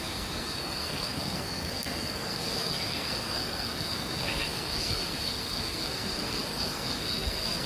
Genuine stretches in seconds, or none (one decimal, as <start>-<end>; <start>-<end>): none